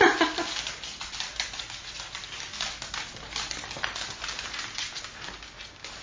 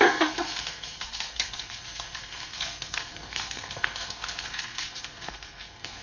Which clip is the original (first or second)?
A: first